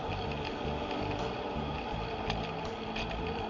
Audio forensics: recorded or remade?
recorded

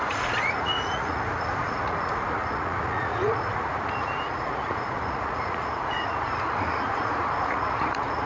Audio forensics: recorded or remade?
remade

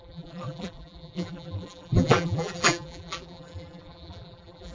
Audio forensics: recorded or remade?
remade